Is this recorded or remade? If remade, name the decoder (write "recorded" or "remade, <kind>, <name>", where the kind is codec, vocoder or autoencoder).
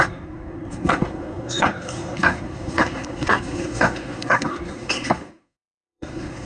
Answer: remade, codec, SNAC